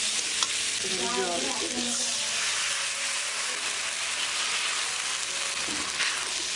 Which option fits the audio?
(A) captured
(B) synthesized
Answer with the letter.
A